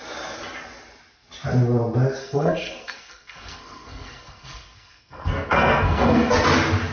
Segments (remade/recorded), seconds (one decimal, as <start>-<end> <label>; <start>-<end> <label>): 0.0-2.2 recorded; 2.2-6.3 remade; 6.3-6.9 recorded